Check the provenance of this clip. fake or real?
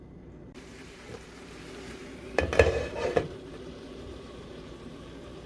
fake